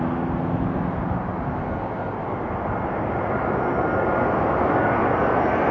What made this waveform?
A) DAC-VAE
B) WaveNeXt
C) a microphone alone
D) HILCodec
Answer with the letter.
C